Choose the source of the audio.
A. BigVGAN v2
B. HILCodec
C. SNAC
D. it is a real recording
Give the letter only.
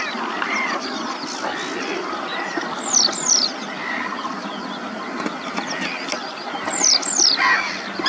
D